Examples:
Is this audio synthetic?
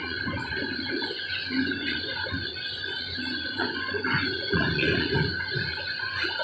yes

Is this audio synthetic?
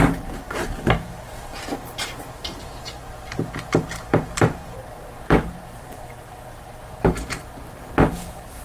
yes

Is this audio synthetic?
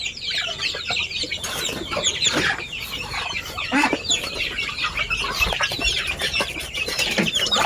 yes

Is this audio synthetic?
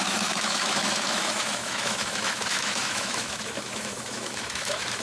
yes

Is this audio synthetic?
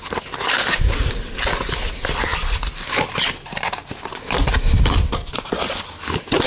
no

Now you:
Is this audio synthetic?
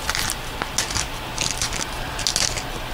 no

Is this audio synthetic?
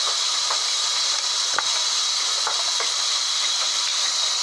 no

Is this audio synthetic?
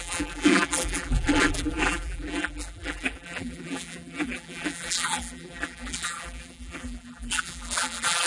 yes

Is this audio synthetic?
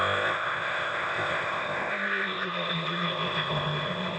yes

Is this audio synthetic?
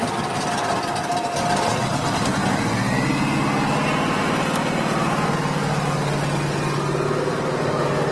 no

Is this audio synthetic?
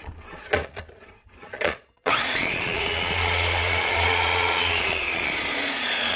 yes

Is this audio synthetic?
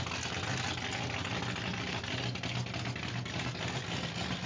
no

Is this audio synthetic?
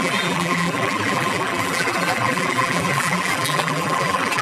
yes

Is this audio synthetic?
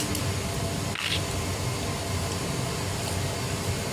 no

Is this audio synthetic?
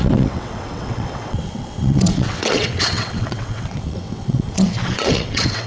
yes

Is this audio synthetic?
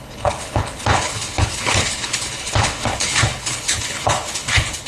yes